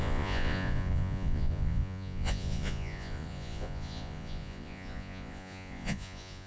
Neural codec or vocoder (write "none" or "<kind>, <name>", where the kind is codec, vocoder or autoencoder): vocoder, Vocos